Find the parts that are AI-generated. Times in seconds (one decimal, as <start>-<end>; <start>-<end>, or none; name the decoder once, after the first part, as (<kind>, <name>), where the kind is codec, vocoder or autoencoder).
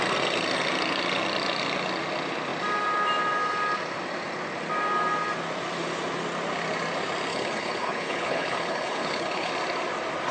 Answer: 7.3-9.5 (codec, HILCodec)